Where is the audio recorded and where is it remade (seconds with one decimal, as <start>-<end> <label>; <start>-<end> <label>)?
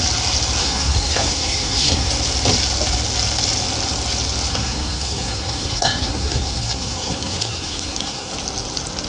0.0-0.6 recorded; 0.6-2.1 remade; 2.1-4.5 recorded; 4.5-8.3 remade; 8.3-9.1 recorded